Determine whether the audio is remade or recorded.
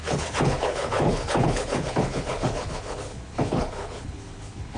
remade